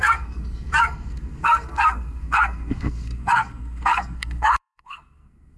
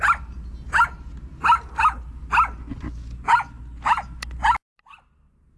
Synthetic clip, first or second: first